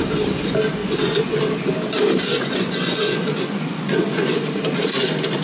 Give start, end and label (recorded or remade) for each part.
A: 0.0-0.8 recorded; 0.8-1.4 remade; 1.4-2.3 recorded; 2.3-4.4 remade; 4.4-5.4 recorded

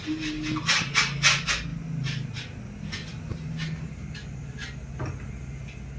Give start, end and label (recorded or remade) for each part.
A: 0.0-6.0 recorded

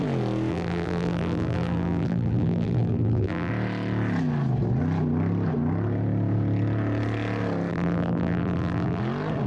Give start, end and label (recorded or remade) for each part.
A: 0.0-0.5 recorded; 0.5-3.5 remade; 3.5-7.7 recorded; 7.7-9.0 remade; 9.0-9.5 recorded

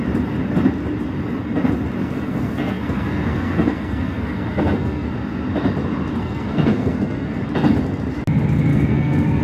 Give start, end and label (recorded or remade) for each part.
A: 0.0-2.0 recorded; 2.0-5.1 remade; 5.1-6.2 recorded; 6.2-7.4 remade; 7.4-8.7 recorded; 8.7-9.4 remade

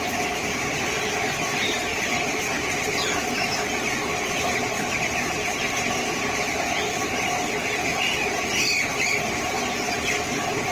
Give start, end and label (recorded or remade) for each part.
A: 0.0-10.7 recorded

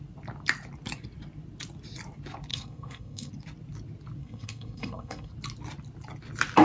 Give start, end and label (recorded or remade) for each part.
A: 0.0-2.5 recorded; 2.5-3.3 remade; 3.3-4.2 recorded; 4.2-5.3 remade; 5.3-6.6 recorded

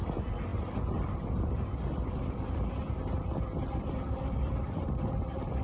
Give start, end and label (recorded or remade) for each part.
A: 0.0-5.6 recorded